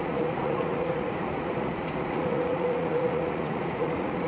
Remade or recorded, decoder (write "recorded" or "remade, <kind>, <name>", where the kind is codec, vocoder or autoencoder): remade, vocoder, Vocos